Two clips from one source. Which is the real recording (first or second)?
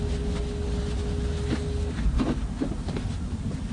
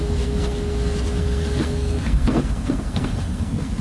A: first